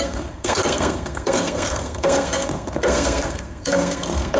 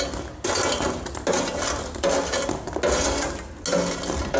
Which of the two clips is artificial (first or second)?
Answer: first